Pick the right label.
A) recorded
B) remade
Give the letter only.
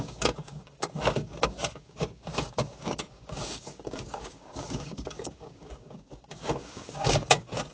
B